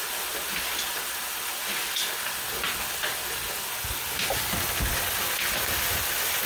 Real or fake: real